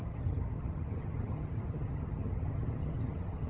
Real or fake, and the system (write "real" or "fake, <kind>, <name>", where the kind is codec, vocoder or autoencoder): fake, vocoder, HiFi-GAN